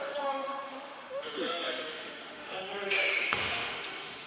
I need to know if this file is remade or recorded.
remade